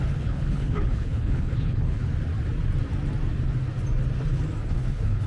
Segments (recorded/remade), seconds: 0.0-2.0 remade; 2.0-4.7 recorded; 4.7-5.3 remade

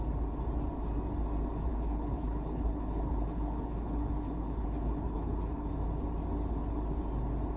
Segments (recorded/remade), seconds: 0.0-1.7 recorded; 1.7-5.7 remade; 5.7-7.6 recorded